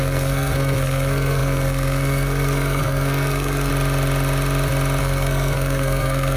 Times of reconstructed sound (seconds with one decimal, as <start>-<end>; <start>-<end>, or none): 0.0-3.7; 5.0-6.4